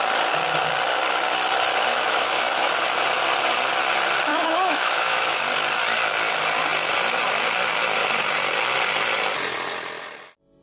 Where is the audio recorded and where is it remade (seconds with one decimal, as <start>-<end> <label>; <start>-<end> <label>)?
0.0-1.9 recorded; 1.9-2.7 remade; 2.7-4.3 recorded; 4.3-5.4 remade; 5.4-10.6 recorded